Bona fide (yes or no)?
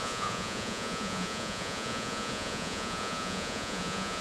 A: no